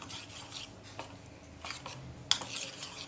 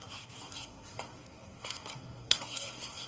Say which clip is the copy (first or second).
second